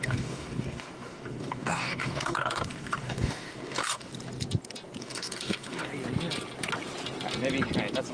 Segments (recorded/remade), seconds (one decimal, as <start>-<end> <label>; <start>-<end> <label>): 0.0-4.1 remade; 4.1-5.0 recorded; 5.0-5.9 remade; 5.9-8.1 recorded